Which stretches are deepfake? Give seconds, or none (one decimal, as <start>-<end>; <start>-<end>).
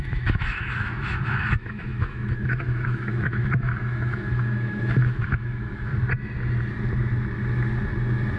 0.0-5.9